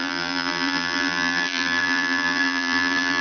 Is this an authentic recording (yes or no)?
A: no